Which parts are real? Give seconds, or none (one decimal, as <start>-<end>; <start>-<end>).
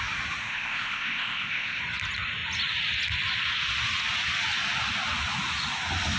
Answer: 0.0-0.4; 1.8-6.2